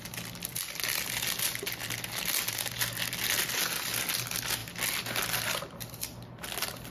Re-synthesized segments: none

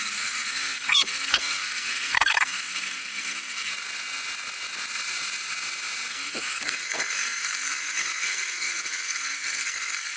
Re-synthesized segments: 0.0-3.7 (codec, SNAC); 6.1-10.2

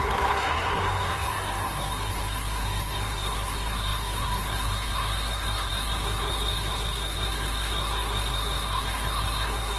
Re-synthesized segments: 0.0-9.8 (codec, SNAC)

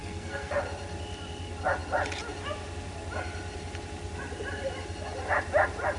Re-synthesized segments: 0.0-0.5 (codec, SNAC)

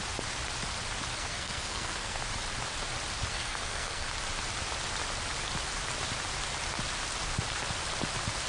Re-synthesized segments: 1.1-2.2 (codec, SNAC); 3.3-4.1

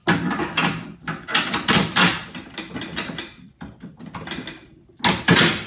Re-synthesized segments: none

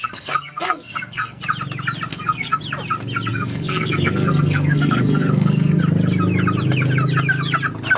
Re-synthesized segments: 0.0-1.4 (codec, SNAC); 2.1-2.6; 3.3-5.8